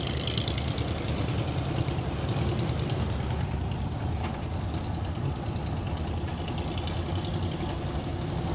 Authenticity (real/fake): real